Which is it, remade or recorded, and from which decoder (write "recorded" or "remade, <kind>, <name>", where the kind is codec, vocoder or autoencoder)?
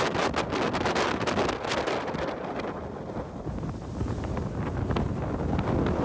recorded